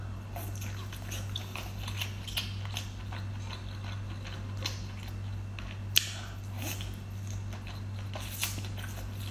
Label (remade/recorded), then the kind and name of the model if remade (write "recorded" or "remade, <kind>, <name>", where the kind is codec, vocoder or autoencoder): recorded